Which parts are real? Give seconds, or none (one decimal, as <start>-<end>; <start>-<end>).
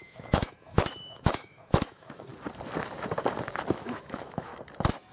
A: 2.3-3.7; 4.5-5.1